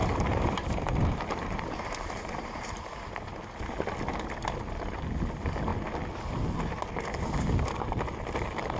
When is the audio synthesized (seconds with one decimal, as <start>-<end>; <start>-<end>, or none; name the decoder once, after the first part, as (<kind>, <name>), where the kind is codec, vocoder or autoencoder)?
0.0-3.6 (vocoder, BigVGAN v2)